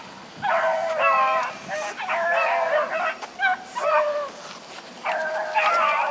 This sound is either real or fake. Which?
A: real